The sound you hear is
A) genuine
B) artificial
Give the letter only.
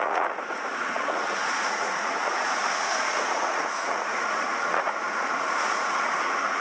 B